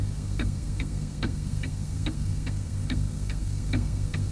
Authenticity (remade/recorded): remade